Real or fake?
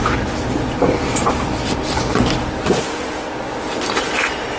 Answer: real